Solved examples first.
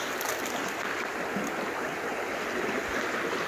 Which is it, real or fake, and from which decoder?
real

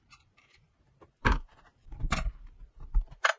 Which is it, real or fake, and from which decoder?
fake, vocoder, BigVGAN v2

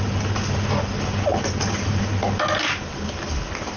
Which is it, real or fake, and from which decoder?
real